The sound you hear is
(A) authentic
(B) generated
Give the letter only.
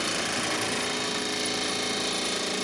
A